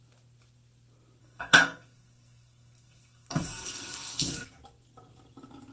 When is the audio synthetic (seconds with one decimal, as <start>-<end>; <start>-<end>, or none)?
1.2-4.6